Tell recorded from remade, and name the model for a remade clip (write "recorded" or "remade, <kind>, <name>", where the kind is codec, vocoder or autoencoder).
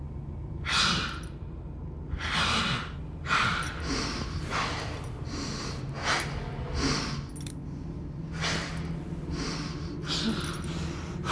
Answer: recorded